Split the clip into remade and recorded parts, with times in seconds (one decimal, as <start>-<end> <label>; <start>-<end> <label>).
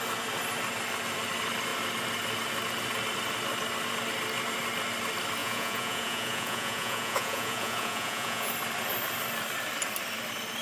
0.0-5.4 recorded; 5.4-8.5 remade; 8.5-10.6 recorded